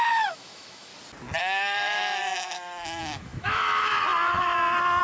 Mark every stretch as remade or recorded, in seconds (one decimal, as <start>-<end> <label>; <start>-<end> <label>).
0.0-0.9 remade; 0.9-1.4 recorded; 1.4-3.9 remade; 3.9-5.0 recorded